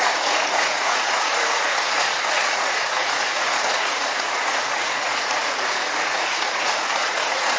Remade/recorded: remade